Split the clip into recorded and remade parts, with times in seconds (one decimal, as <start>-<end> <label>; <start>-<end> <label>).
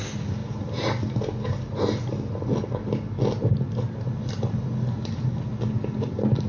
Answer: 0.0-6.5 recorded